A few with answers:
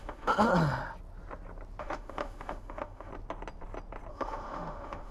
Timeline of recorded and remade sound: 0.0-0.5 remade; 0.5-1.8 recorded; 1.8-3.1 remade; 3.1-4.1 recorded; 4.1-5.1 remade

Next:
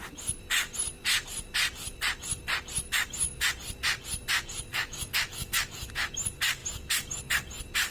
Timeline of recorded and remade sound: 0.0-4.7 recorded; 4.7-5.9 remade; 5.9-7.9 recorded

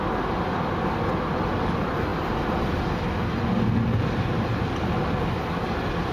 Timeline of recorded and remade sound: 0.0-6.1 recorded

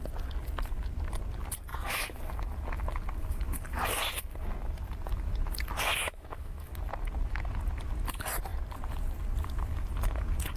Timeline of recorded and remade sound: 0.0-1.7 recorded; 1.7-2.2 remade; 2.2-6.0 recorded; 6.0-6.7 remade; 6.7-10.6 recorded

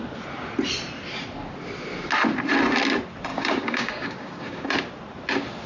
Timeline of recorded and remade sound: 0.0-3.3 recorded; 3.3-4.7 remade; 4.7-5.7 recorded

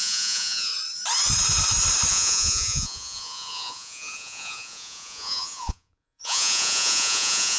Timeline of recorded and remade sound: 0.0-0.7 remade; 0.7-2.1 recorded; 2.1-7.6 remade

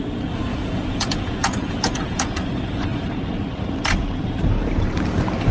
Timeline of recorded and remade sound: 0.0-0.5 recorded; 0.5-2.4 remade; 2.4-5.5 recorded